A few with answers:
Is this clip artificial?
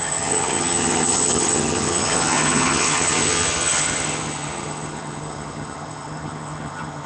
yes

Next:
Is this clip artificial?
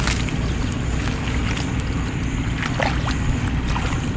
no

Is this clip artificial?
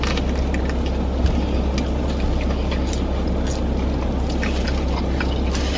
no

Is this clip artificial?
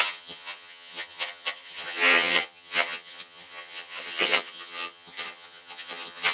yes